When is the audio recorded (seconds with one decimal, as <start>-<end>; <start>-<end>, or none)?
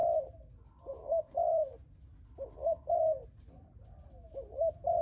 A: 0.0-5.0